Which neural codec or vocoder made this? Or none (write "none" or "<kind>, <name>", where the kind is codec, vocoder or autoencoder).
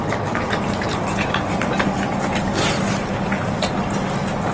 none